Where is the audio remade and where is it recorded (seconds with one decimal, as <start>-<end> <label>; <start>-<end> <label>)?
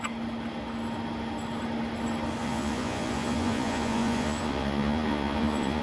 0.0-2.4 recorded; 2.4-5.8 remade